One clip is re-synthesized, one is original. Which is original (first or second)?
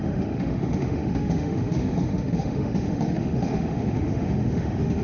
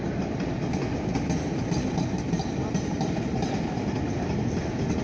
second